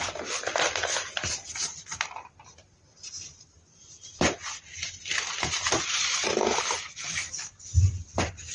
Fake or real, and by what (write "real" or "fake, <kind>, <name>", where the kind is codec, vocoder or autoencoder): real